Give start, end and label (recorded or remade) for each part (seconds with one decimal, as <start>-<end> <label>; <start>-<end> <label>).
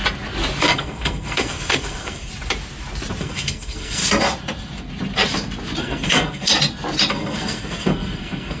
0.0-0.6 recorded; 0.6-2.3 remade; 2.3-3.2 recorded; 3.2-4.0 remade; 4.0-5.8 recorded; 5.8-6.5 remade; 6.5-7.1 recorded; 7.1-8.6 remade